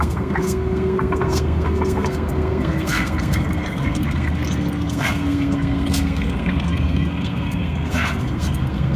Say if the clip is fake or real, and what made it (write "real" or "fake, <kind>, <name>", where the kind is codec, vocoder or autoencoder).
fake, codec, SNAC